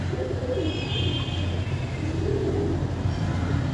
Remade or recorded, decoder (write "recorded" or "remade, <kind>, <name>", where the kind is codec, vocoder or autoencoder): recorded